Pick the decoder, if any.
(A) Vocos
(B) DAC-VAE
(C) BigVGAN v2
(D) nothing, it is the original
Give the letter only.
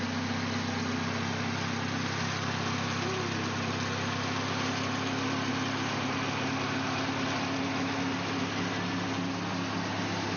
D